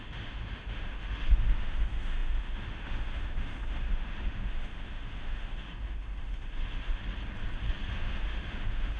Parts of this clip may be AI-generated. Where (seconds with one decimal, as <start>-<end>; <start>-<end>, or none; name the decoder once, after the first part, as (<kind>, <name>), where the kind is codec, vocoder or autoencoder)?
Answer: 0.0-7.0 (autoencoder, DAC-VAE); 7.9-9.0